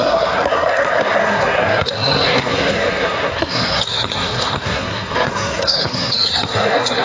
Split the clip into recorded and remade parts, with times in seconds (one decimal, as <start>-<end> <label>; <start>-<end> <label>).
0.0-7.0 remade